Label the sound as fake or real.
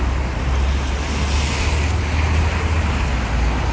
real